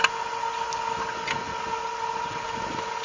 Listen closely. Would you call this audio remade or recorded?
recorded